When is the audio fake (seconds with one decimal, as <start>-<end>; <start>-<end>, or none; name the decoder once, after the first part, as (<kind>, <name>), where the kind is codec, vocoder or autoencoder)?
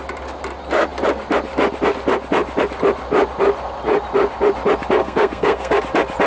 5.0-5.8 (codec, SNAC)